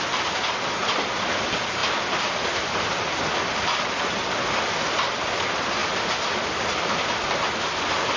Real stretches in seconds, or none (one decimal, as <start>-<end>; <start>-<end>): 0.0-8.2